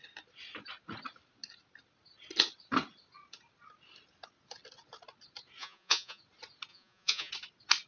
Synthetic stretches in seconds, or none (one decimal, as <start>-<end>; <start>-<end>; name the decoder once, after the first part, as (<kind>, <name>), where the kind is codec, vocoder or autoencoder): 5.6-6.2 (vocoder, Vocos); 6.7-7.3